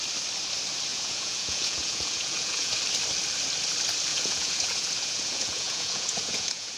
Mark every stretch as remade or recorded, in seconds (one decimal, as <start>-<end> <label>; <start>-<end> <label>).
0.0-0.9 recorded; 0.9-2.8 remade; 2.8-4.1 recorded; 4.1-6.8 remade